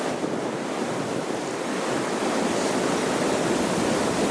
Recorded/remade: recorded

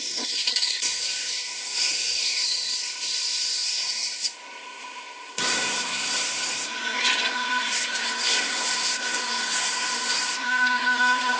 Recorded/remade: remade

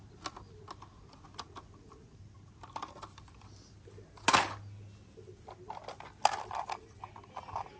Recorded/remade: recorded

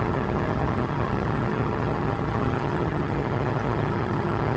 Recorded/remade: remade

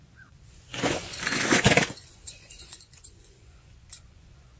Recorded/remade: remade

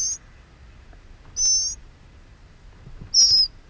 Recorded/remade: recorded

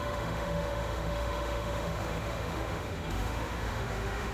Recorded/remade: remade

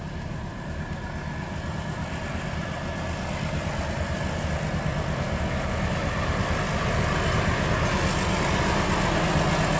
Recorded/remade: recorded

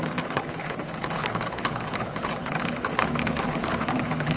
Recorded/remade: remade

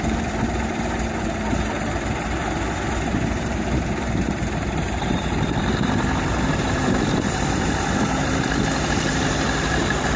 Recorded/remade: remade